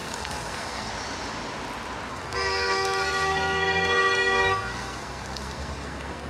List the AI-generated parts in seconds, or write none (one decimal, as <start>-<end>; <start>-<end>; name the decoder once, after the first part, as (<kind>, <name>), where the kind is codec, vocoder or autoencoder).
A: 0.0-0.9 (codec, SNAC); 2.1-6.3

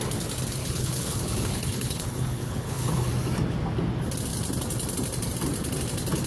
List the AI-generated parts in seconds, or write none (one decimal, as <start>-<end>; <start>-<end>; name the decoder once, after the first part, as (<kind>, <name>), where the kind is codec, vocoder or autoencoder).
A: 0.6-3.1 (codec, HILCodec)

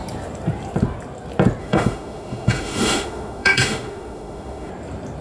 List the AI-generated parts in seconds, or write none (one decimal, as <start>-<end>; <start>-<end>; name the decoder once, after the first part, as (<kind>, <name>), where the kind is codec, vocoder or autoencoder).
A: 1.6-4.7 (autoencoder, DAC-VAE)

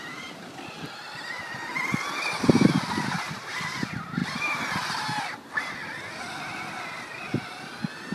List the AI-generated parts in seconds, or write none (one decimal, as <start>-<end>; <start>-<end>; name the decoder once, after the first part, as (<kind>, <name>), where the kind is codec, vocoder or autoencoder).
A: none

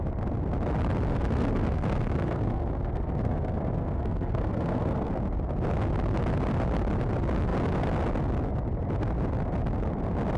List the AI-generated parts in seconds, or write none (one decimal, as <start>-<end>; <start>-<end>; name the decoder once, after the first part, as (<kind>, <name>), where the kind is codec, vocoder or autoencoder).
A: 1.1-5.1 (codec, SNAC)

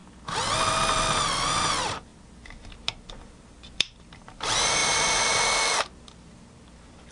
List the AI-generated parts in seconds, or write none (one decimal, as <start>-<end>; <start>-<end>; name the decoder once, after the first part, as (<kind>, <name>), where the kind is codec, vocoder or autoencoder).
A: 1.7-2.1 (vocoder, BigVGAN v2); 3.1-7.1

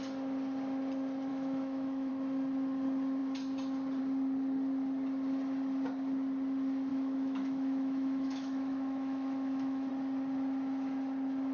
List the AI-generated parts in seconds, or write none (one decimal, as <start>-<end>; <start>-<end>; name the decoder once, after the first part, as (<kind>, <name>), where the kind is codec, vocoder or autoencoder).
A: 1.3-2.1 (autoencoder, DAC-VAE); 6.9-9.9